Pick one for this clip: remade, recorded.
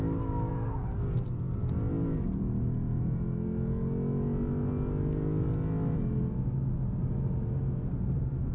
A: recorded